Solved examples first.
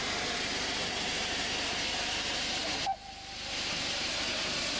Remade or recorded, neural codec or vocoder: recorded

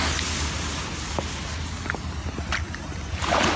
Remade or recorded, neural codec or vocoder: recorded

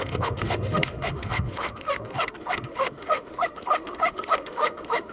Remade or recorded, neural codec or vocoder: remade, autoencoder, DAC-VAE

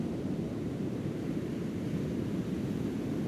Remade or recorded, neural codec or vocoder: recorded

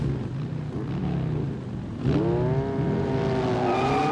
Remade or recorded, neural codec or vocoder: recorded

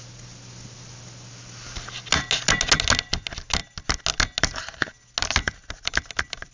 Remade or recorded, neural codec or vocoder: recorded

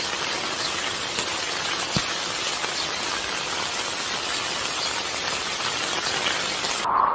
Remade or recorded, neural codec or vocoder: recorded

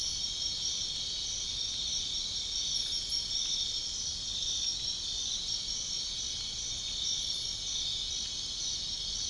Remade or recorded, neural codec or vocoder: recorded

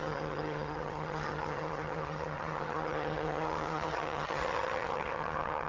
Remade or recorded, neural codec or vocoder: remade, vocoder, HiFi-GAN